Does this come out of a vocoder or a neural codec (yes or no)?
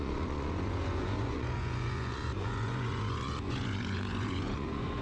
yes